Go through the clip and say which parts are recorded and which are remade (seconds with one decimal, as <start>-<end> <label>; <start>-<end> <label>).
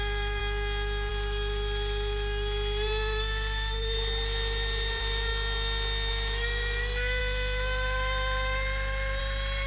0.0-0.4 remade; 0.4-1.1 recorded; 1.1-5.3 remade; 5.3-6.1 recorded; 6.1-9.7 remade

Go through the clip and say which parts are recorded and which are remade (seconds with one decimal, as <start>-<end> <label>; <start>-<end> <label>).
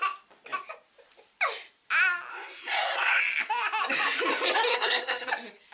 0.0-2.3 recorded; 2.3-3.2 remade; 3.2-4.7 recorded; 4.7-5.3 remade; 5.3-5.7 recorded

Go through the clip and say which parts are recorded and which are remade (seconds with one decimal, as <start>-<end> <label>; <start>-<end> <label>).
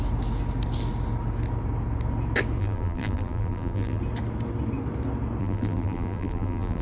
0.0-2.6 recorded; 2.6-4.0 remade; 4.0-5.4 recorded; 5.4-6.8 remade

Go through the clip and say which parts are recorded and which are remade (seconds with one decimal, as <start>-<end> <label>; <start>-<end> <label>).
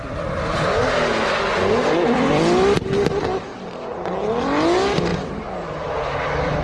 0.0-6.6 recorded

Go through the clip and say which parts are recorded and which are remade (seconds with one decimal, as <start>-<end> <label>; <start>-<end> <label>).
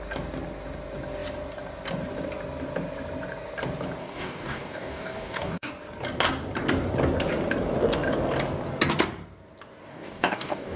0.0-4.0 recorded; 4.0-5.7 remade; 5.7-9.9 recorded; 9.9-10.8 remade